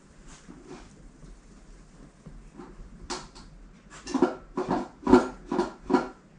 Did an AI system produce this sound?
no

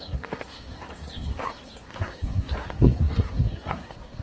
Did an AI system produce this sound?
yes